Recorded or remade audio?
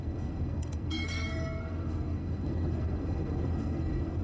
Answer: remade